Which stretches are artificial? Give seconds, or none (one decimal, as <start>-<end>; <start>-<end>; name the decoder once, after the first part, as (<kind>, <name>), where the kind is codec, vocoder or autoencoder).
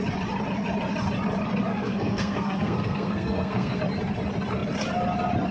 1.7-3.8 (codec, SNAC)